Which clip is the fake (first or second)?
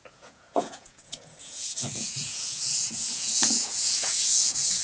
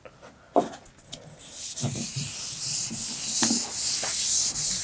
first